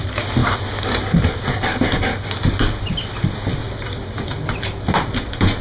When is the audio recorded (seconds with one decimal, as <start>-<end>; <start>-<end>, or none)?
0.0-0.4; 3.1-3.6; 4.6-5.6